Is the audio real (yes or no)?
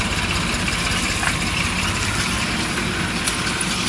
yes